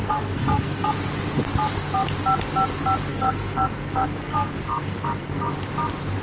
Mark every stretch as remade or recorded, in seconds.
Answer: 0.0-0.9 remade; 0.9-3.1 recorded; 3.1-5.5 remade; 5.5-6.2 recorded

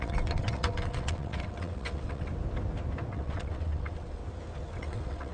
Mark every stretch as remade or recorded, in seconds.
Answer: 0.0-2.3 remade; 2.3-3.1 recorded; 3.1-4.2 remade; 4.2-4.8 recorded; 4.8-5.3 remade

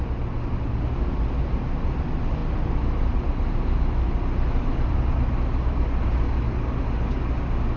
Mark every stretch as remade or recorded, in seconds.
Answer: 0.0-7.8 recorded